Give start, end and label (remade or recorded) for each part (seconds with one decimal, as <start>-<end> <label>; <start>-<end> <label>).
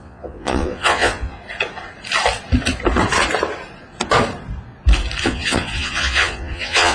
0.0-1.4 remade; 1.4-5.2 recorded; 5.2-6.9 remade